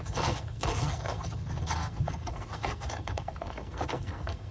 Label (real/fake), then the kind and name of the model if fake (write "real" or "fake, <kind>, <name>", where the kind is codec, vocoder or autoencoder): fake, codec, SNAC